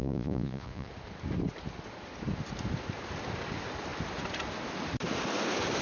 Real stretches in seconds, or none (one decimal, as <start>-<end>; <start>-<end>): 0.9-5.8